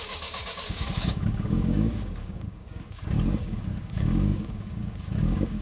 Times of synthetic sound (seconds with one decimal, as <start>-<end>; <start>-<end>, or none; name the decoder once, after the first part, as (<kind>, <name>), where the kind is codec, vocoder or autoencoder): 0.0-5.6 (codec, DAC)